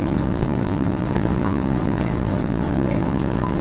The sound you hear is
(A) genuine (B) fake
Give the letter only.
B